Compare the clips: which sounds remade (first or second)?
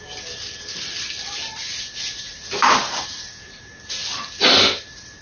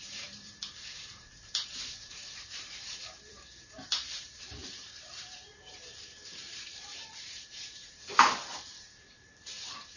second